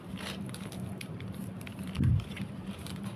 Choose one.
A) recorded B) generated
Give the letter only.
B